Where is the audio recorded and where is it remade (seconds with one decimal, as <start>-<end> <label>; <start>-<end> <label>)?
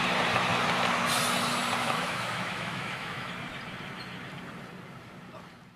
0.0-1.8 recorded; 1.8-3.3 remade; 3.3-5.8 recorded